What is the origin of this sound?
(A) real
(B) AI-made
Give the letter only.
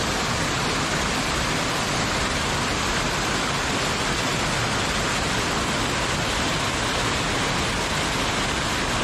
A